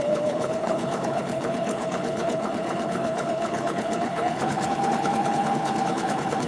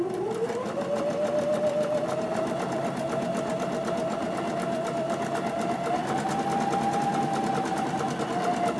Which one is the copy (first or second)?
first